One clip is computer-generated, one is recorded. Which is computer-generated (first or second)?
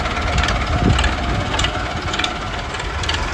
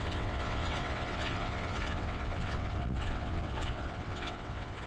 second